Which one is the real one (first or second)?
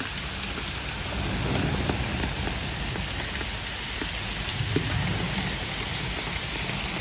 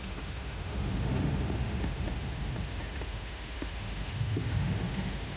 first